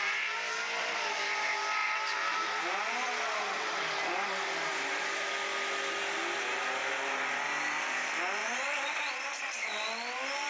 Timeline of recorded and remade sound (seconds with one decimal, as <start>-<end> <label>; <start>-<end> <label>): 0.0-1.8 recorded; 1.8-5.3 remade; 5.3-8.4 recorded; 8.4-9.5 remade; 9.5-10.5 recorded